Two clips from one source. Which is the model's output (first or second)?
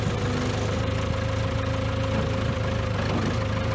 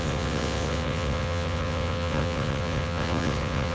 second